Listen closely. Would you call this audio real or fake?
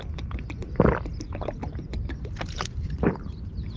real